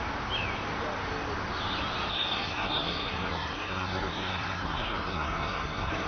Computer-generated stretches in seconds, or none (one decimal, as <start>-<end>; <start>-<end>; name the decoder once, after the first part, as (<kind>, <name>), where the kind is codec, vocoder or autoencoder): 2.1-6.1 (codec, SNAC)